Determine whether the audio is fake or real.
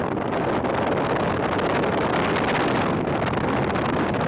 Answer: real